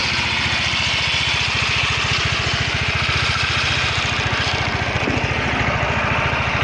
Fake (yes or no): no